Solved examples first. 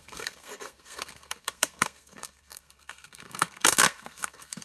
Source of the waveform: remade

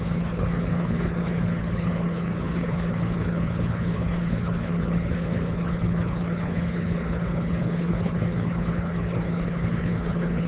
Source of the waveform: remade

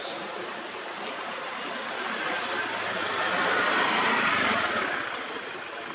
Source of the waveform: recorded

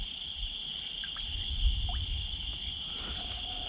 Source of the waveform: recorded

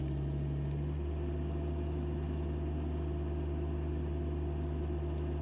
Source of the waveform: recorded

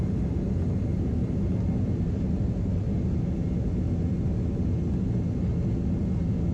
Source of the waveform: recorded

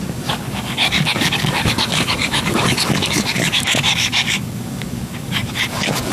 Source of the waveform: remade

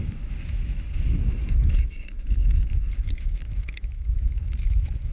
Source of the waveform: remade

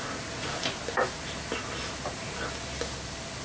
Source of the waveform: recorded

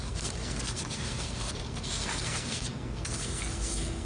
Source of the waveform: remade